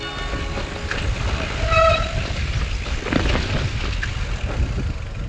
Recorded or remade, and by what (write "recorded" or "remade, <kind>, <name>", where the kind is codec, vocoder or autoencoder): recorded